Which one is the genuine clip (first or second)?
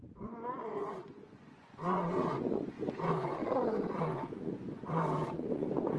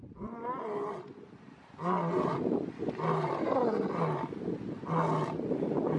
second